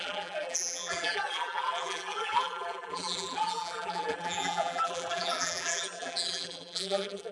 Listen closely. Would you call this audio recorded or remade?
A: remade